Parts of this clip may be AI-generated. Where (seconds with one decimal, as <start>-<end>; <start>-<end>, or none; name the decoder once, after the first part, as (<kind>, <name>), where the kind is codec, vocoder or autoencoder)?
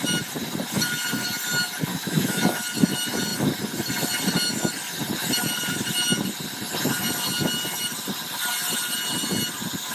1.9-2.6 (autoencoder, DAC-VAE)